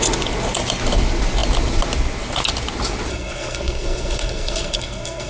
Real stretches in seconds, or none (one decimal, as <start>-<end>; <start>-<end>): 0.0-3.1